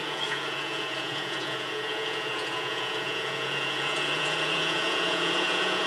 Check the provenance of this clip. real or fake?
fake